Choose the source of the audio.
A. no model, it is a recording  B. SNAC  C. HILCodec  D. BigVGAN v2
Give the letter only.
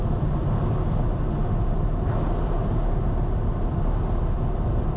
A